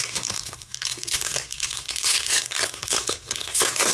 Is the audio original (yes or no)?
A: no